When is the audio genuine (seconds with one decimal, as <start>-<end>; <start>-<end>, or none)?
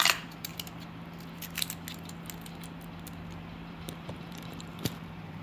0.5-3.7